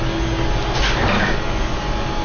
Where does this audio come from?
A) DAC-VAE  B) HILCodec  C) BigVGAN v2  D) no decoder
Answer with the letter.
D